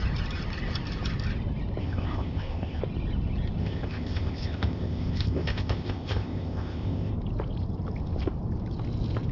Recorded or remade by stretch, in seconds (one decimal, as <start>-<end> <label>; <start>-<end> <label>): 0.0-1.8 recorded; 1.8-2.8 remade; 2.8-3.6 recorded; 3.6-7.1 remade; 7.1-9.3 recorded